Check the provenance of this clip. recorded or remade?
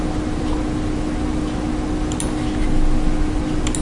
recorded